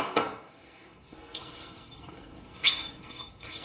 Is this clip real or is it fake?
fake